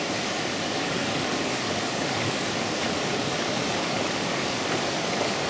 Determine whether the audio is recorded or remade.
remade